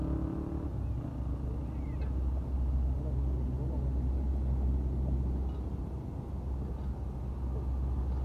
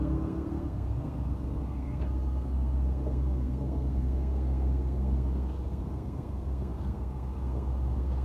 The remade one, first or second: second